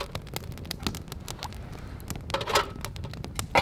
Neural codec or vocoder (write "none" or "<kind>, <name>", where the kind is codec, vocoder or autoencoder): none